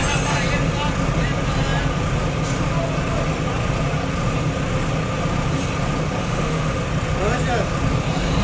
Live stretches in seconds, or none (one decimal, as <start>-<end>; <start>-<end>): 0.0-6.2; 6.8-8.4